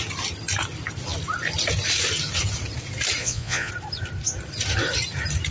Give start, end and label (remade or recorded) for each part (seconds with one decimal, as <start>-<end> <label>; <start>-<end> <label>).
0.0-3.2 recorded; 3.2-3.7 remade; 3.7-5.5 recorded